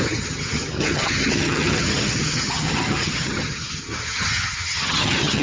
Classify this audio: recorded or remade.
remade